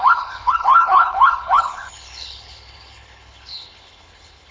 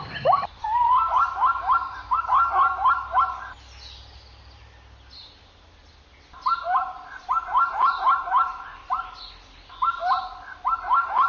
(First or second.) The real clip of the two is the second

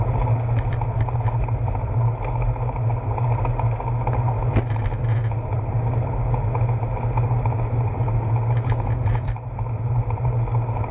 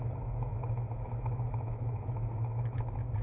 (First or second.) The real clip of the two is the first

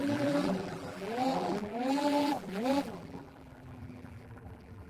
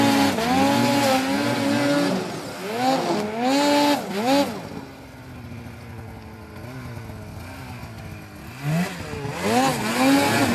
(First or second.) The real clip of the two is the second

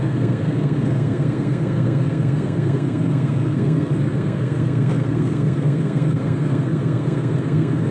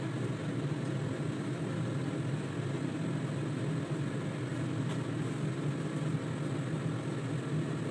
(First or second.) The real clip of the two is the second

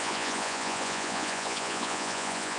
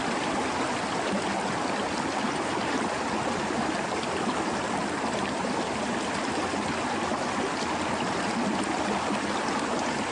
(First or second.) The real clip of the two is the second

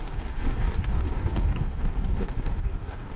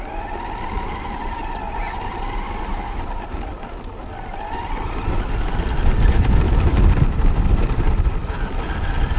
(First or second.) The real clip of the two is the second